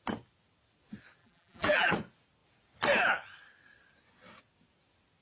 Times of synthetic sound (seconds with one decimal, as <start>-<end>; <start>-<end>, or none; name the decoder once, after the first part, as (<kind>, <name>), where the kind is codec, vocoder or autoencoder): 1.2-1.9 (vocoder, BigVGAN v2)